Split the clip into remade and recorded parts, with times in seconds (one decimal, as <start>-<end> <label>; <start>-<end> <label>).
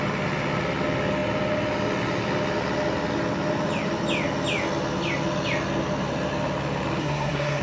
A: 0.0-7.0 recorded; 7.0-7.6 remade